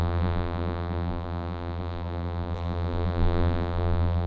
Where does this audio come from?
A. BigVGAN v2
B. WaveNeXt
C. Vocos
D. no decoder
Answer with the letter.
A